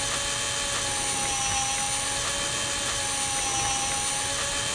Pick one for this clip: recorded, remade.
recorded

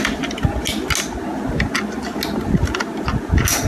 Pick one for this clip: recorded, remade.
recorded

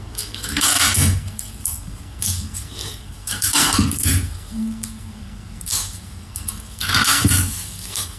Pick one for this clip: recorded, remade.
remade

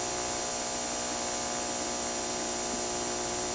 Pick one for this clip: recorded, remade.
recorded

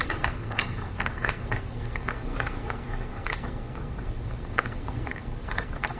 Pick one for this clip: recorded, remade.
remade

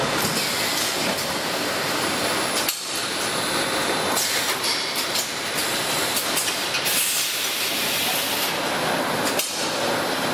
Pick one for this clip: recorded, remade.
recorded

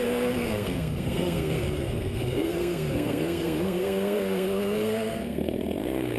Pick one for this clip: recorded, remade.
remade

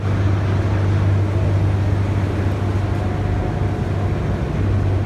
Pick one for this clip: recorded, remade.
recorded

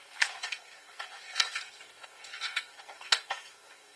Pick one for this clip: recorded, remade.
remade